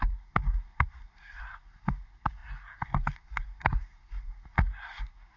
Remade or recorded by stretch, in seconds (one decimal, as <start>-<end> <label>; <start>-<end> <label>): 0.0-5.4 remade